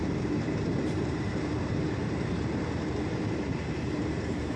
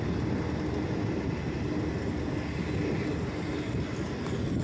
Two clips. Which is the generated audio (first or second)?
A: first